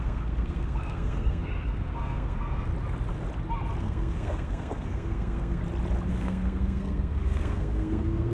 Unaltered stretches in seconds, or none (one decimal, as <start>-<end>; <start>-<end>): 2.7-3.8; 5.6-6.1